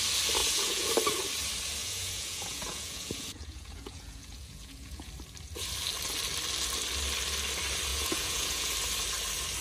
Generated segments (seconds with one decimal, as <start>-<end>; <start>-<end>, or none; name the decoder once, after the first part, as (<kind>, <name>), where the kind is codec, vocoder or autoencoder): 0.4-0.9 (vocoder, Vocos); 1.8-5.1; 7.9-8.7

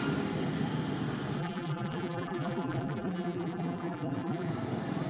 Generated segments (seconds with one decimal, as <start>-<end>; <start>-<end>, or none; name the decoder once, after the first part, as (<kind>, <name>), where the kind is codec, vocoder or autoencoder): 1.4-4.5 (vocoder, BigVGAN v2)

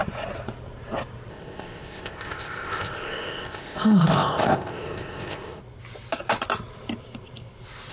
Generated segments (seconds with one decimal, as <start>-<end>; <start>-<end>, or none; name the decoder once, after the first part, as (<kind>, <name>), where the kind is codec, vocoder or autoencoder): 1.3-5.6 (codec, ZipCodec)

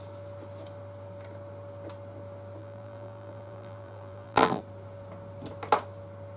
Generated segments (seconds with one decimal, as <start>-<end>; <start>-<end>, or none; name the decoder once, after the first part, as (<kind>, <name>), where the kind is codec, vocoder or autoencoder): 2.6-4.6 (vocoder, BigVGAN v2)

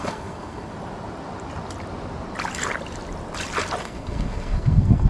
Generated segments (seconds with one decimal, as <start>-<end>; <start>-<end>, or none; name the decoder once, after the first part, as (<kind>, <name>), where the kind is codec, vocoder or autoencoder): 0.0-0.7 (codec, SNAC); 3.8-5.1

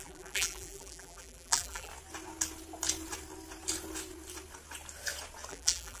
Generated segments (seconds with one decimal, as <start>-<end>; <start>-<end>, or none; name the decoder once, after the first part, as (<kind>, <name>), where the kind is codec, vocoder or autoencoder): 0.0-1.9 (vocoder, BigVGAN v2); 5.5-6.0